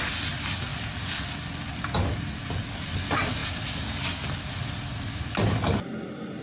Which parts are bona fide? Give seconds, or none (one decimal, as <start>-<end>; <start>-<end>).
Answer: 0.0-6.4